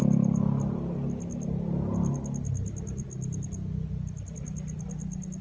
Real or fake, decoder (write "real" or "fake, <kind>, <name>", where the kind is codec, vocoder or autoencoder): real